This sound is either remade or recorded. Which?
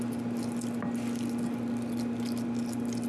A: recorded